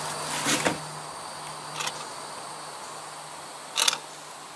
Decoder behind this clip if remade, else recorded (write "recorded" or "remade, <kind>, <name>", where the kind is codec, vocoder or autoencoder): recorded